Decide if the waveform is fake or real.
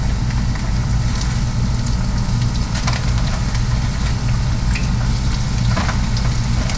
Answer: real